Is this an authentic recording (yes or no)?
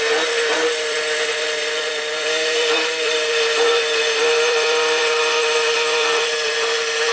no